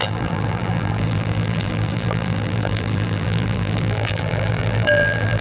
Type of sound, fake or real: fake